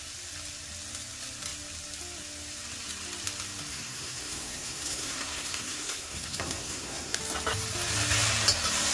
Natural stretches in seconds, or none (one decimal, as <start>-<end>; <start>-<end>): 0.0-3.7; 7.2-8.9